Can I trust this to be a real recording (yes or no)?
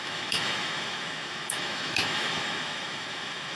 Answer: no